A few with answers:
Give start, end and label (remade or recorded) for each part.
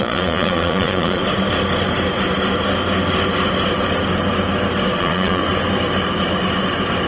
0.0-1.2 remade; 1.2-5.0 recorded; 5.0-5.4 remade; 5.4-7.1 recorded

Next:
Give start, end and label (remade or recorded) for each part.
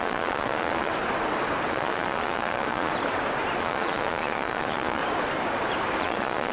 0.0-0.9 remade; 0.9-1.7 recorded; 1.7-2.9 remade; 2.9-3.6 recorded; 3.6-5.0 remade; 5.0-6.0 recorded; 6.0-6.5 remade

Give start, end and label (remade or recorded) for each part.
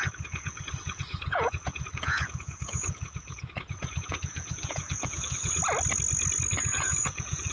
0.0-5.6 remade; 5.6-6.5 recorded; 6.5-7.5 remade